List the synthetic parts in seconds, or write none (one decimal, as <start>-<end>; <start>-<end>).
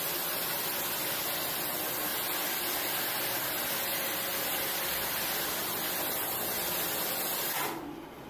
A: none